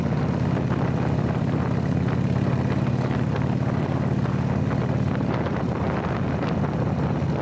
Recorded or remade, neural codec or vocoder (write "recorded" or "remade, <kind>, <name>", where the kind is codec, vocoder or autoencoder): recorded